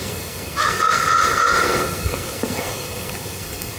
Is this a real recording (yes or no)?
no